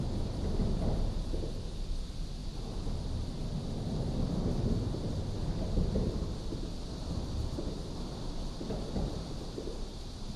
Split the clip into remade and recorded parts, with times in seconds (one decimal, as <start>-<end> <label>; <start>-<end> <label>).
0.0-10.4 recorded